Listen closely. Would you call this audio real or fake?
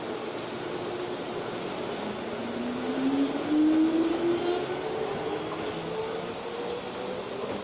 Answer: real